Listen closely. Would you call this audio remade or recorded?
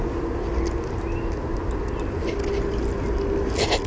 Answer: recorded